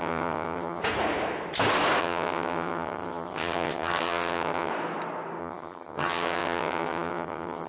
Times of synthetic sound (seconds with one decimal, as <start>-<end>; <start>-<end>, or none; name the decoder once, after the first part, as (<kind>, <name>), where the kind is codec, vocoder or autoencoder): 0.0-0.8 (vocoder, HiFi-GAN); 2.0-4.7; 5.4-7.7